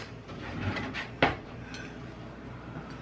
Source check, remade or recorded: remade